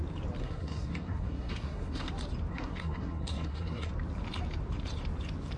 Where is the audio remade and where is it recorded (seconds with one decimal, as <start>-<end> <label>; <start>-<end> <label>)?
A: 0.0-0.4 recorded; 0.4-2.1 remade; 2.1-2.5 recorded; 2.5-3.9 remade; 3.9-5.6 recorded